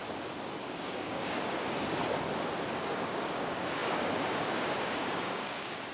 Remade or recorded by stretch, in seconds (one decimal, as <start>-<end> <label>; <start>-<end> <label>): 0.0-0.6 recorded; 0.6-1.6 remade; 1.6-2.7 recorded; 2.7-5.9 remade